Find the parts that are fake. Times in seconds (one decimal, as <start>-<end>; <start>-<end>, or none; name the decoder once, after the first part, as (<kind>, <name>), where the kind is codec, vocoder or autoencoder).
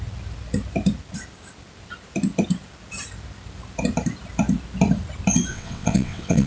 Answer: 5.5-6.5 (vocoder, WaveNeXt)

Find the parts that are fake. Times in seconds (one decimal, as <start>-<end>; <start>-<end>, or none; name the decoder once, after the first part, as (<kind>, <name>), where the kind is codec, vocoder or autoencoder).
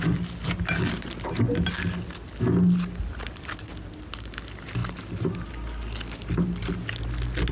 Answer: none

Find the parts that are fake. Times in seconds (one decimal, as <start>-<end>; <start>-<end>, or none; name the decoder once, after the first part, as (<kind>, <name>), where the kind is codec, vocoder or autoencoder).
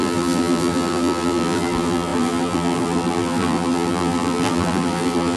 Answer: 0.0-5.4 (vocoder, BigVGAN v2)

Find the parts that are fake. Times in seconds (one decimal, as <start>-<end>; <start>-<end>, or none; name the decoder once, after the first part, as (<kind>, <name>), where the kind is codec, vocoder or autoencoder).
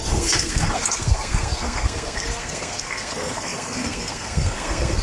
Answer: 0.0-5.0 (codec, SNAC)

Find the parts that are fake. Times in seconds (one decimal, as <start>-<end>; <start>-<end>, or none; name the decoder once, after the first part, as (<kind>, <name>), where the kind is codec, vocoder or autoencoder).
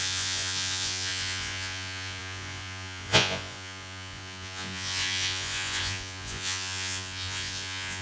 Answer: 0.0-8.0 (vocoder, Vocos)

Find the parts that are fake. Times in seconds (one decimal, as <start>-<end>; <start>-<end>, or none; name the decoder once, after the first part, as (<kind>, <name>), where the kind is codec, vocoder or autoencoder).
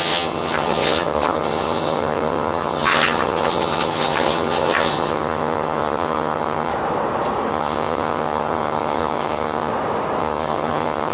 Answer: 0.0-6.7 (vocoder, HiFi-GAN); 7.5-9.7; 10.2-11.1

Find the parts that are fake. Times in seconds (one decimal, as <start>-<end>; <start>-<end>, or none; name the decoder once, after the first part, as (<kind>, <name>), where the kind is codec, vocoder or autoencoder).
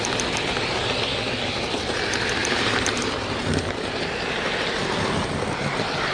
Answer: none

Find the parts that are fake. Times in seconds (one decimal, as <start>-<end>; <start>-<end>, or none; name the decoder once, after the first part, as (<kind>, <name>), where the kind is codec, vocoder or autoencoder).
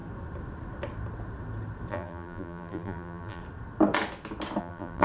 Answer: 1.9-3.4 (vocoder, BigVGAN v2); 4.6-5.0